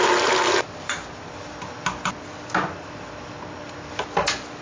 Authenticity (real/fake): real